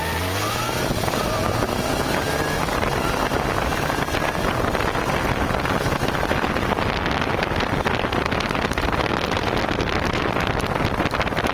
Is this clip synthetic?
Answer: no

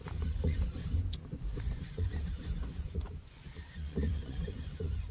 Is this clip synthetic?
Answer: yes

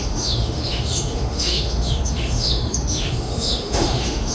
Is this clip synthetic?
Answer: yes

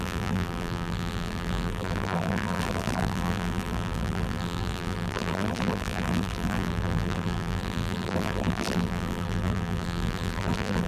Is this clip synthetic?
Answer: yes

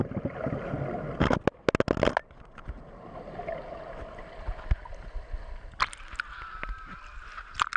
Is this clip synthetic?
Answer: no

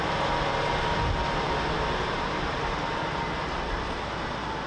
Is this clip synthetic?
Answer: no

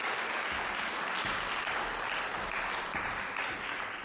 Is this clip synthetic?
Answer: no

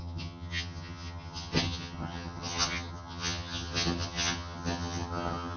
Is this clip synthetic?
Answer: yes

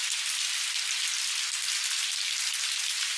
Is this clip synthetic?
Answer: no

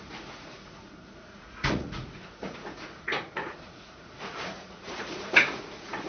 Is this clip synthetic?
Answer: yes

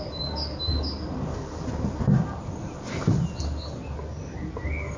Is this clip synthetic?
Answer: no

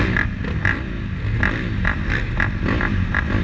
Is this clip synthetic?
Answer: no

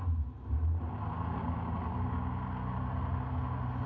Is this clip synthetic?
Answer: no